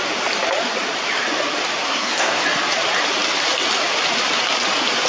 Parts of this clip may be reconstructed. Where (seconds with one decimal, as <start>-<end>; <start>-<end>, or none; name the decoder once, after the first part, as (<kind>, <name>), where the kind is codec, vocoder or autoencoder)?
1.9-2.4 (codec, SNAC)